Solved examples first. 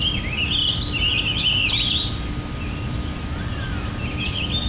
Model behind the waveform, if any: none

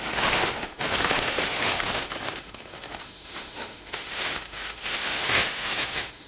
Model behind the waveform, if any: autoencoder, DAC-VAE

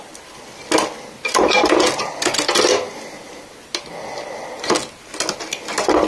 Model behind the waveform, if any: none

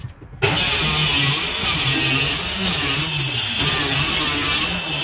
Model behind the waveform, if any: none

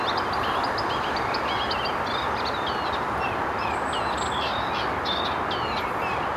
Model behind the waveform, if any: none